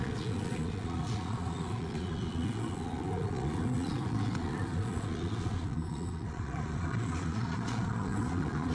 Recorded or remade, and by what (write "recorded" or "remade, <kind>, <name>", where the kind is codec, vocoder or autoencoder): remade, vocoder, Vocos